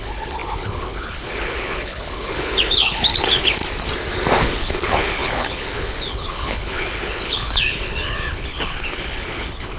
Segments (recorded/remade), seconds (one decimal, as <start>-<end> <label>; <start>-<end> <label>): 0.0-3.6 remade; 3.6-4.4 recorded; 4.4-9.8 remade